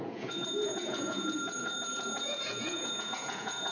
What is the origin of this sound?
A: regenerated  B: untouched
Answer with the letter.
A